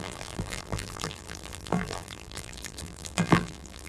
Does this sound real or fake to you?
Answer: fake